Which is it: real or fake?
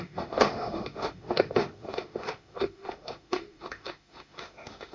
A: fake